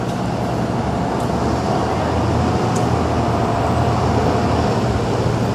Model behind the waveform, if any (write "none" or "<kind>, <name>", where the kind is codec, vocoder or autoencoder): none